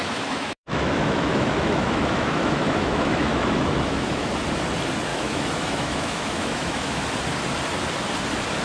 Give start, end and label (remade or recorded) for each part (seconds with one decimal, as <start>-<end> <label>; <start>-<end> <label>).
0.0-4.3 remade; 4.3-5.1 recorded; 5.1-7.0 remade; 7.0-8.6 recorded